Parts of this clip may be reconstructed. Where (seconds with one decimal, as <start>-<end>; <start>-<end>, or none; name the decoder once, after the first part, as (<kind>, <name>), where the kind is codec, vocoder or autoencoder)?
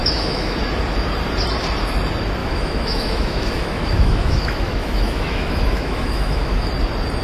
0.0-0.6 (autoencoder, DAC-VAE); 2.4-6.7